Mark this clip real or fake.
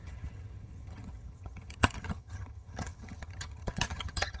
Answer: fake